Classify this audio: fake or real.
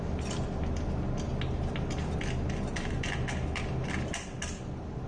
real